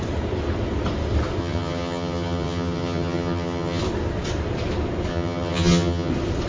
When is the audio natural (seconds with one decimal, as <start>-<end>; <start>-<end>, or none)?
0.0-1.4; 3.8-5.1; 6.1-6.5